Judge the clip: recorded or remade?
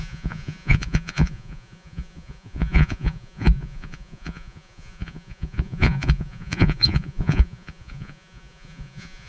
remade